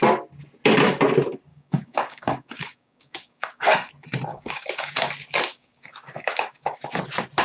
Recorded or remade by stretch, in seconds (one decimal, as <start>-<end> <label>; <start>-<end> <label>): 0.0-1.5 recorded; 1.5-3.9 remade; 3.9-4.3 recorded; 4.3-5.1 remade; 5.1-5.5 recorded; 5.5-7.0 remade; 7.0-7.4 recorded